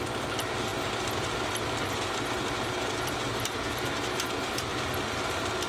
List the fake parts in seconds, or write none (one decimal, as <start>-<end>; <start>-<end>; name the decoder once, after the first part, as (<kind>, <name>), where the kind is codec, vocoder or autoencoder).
none